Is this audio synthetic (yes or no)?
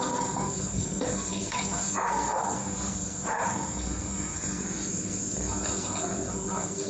yes